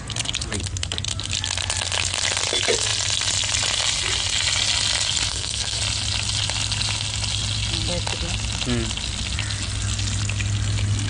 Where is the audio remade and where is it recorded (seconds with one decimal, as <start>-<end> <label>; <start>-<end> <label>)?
0.0-5.3 recorded; 5.3-5.8 remade; 5.8-11.1 recorded